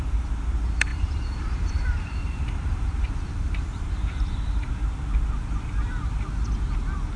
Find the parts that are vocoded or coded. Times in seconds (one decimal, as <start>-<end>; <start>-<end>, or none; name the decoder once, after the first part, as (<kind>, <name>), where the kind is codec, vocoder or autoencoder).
0.9-4.7 (vocoder, BigVGAN v2)